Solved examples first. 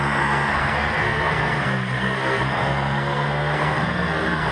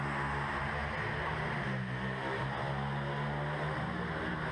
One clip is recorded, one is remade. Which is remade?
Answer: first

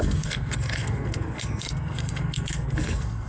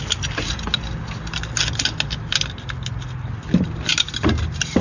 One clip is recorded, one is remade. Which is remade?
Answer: first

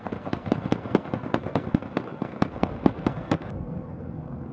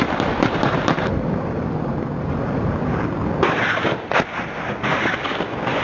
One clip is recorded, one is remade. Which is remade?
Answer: first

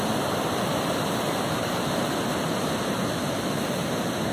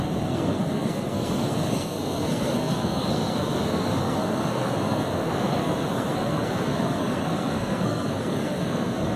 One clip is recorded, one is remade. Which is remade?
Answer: second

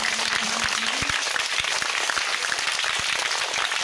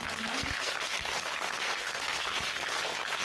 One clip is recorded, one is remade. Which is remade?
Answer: second